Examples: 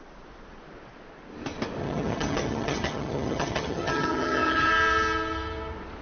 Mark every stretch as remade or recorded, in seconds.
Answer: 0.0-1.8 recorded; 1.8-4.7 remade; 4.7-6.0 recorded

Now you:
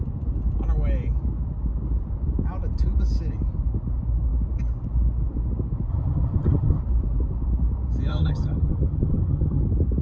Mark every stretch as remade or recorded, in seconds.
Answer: 0.0-5.9 recorded; 5.9-6.8 remade; 6.8-8.1 recorded; 8.1-9.6 remade; 9.6-10.0 recorded

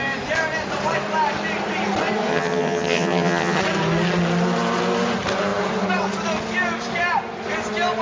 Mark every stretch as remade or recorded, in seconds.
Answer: 0.0-2.3 recorded; 2.3-3.6 remade; 3.6-8.0 recorded

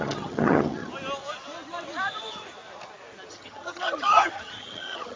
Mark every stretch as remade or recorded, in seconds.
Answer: 0.0-0.9 remade; 0.9-3.3 recorded; 3.3-5.2 remade

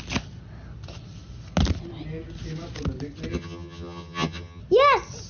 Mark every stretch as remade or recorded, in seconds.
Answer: 0.0-3.3 recorded; 3.3-4.6 remade; 4.6-5.3 recorded

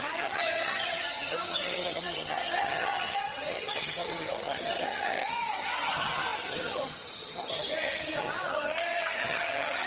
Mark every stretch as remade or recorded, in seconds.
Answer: 0.0-9.9 remade

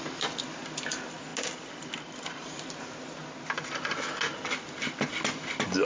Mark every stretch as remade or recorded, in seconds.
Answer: 0.0-5.9 recorded

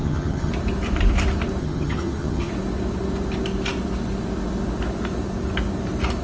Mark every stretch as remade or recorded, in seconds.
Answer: 0.0-0.5 remade; 0.5-1.6 recorded; 1.6-2.5 remade; 2.5-6.2 recorded